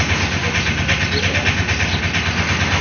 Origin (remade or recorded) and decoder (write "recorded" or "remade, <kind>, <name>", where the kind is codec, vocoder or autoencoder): recorded